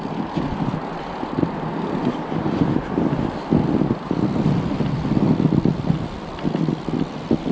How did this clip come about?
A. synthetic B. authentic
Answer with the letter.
A